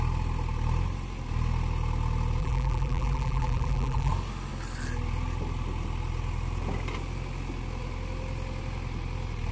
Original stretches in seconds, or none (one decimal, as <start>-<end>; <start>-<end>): 0.0-2.4; 4.1-9.5